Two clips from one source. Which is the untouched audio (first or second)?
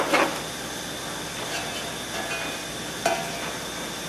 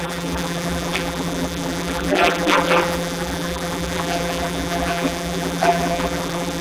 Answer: first